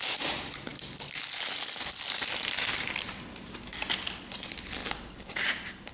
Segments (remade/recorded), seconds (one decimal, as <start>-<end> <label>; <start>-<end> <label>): 0.0-4.8 recorded; 4.8-5.9 remade